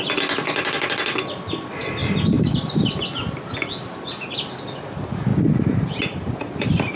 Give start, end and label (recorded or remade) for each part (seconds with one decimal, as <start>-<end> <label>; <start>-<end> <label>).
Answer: 0.0-7.0 recorded